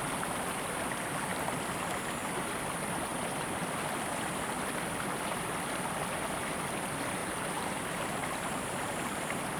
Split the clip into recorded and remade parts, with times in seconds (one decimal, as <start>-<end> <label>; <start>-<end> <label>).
0.0-7.2 recorded; 7.2-9.6 remade